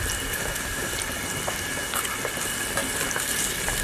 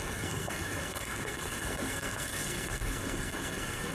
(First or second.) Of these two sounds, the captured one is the first